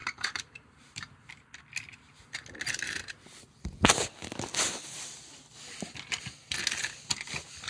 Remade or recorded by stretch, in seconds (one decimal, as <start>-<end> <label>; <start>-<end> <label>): 0.0-1.6 remade; 1.6-7.7 recorded